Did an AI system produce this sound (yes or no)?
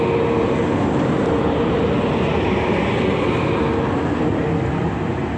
no